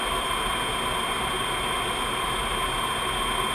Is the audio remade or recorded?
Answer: recorded